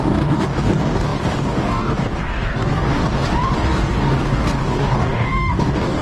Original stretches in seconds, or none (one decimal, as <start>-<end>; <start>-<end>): 3.0-3.6